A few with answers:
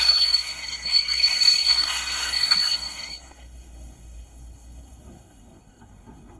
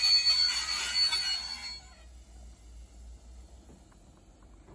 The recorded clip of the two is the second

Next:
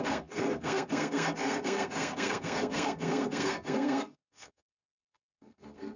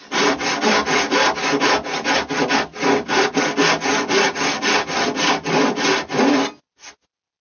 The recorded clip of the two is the second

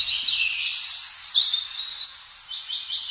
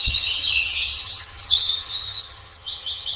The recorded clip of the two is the first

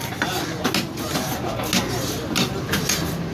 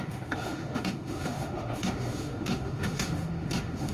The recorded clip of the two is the first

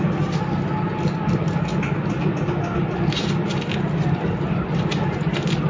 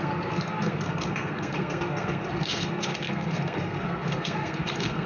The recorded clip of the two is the first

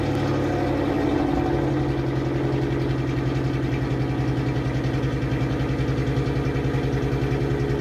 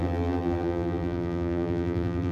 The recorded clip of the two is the first